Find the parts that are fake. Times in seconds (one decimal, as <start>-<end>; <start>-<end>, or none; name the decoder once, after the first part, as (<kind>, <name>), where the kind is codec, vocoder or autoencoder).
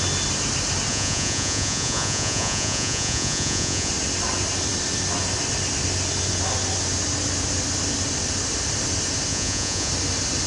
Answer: 0.9-3.9 (vocoder, Vocos); 9.3-9.9